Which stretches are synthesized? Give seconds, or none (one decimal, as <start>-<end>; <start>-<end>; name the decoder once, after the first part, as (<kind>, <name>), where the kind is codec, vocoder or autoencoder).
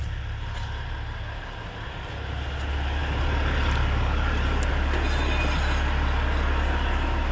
none